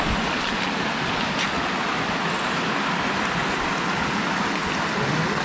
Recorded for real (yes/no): yes